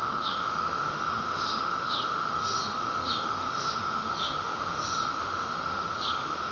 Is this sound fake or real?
fake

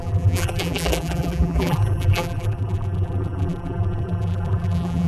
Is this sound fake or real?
fake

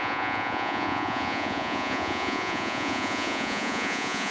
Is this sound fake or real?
fake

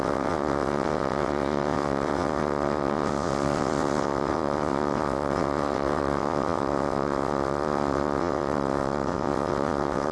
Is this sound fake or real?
fake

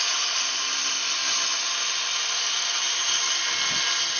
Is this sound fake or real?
real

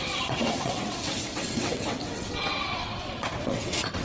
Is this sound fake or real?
fake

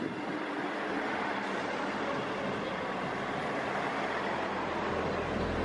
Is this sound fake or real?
real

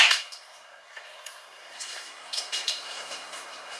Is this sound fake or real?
fake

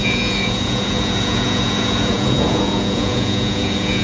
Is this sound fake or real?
fake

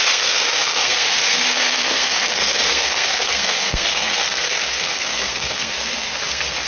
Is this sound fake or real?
fake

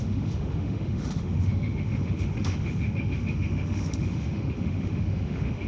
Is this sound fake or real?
fake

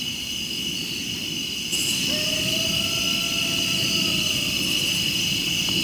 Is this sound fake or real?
real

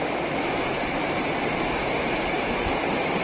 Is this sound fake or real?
real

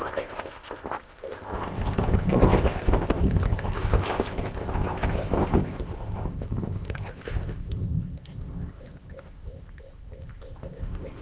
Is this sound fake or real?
fake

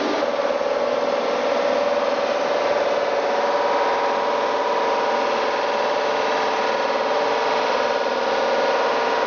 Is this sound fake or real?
real